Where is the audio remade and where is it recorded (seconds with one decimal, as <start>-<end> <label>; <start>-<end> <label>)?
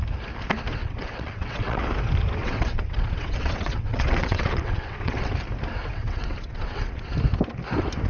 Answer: 0.0-0.8 recorded; 0.8-1.8 remade; 1.8-2.4 recorded; 2.4-5.3 remade; 5.3-5.9 recorded; 5.9-7.1 remade; 7.1-8.1 recorded